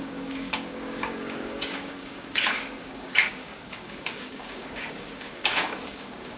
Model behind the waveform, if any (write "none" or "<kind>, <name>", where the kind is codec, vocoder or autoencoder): codec, DAC